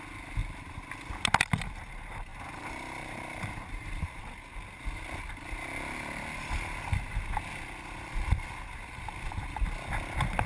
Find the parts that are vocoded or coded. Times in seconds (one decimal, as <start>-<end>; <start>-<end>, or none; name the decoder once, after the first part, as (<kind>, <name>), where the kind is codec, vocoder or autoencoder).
0.4-0.9 (vocoder, BigVGAN v2); 2.3-4.2